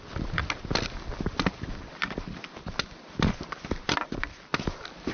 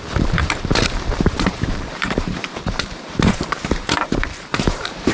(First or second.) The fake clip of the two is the second